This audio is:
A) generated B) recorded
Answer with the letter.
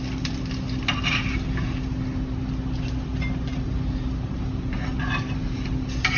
B